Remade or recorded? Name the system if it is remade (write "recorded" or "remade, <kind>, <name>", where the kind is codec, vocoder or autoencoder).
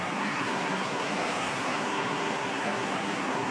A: remade, codec, SNAC